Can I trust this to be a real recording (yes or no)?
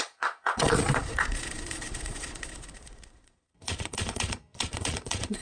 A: no